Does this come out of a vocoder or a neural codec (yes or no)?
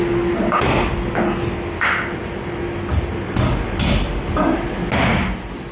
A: no